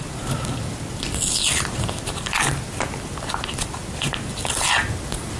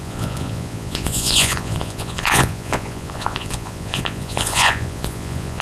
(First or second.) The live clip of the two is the first